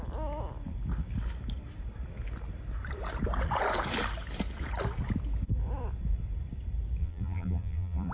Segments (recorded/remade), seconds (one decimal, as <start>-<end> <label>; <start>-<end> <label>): 0.0-7.0 recorded; 7.0-8.1 remade